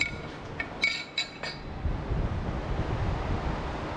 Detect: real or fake fake